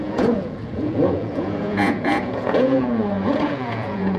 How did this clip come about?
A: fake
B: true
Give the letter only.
A